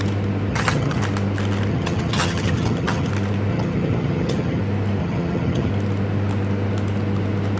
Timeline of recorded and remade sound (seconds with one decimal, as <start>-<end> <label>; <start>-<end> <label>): 0.0-0.5 recorded; 0.5-1.0 remade; 1.0-1.7 recorded; 1.7-3.1 remade; 3.1-3.5 recorded; 3.5-4.6 remade; 4.6-5.0 recorded; 5.0-5.7 remade; 5.7-7.6 recorded